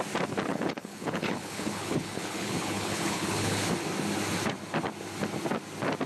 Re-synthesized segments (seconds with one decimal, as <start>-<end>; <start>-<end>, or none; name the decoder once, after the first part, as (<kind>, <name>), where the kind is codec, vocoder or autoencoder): 0.5-3.6 (codec, HILCodec)